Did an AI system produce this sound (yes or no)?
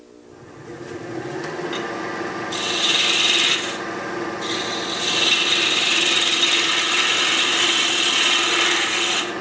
no